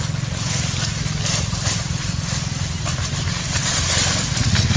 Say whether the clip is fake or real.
real